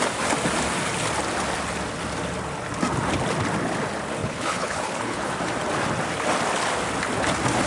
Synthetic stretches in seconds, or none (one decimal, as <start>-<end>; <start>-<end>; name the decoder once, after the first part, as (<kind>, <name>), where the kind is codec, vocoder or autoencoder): 4.2-5.3 (codec, HILCodec)